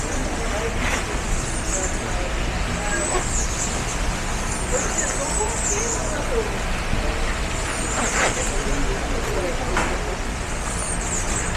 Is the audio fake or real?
real